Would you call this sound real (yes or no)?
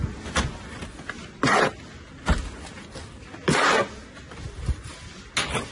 yes